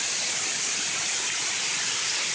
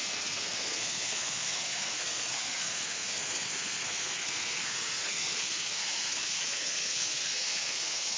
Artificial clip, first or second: second